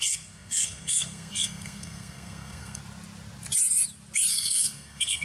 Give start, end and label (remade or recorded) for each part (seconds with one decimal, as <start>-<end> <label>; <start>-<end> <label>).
0.0-2.8 remade; 2.8-4.3 recorded; 4.3-5.2 remade